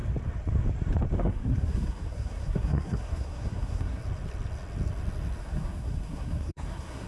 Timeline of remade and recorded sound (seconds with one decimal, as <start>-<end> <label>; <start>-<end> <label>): 0.0-1.2 recorded; 1.2-4.0 remade; 4.0-5.4 recorded; 5.4-7.1 remade